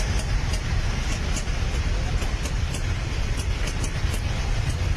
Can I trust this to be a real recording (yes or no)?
yes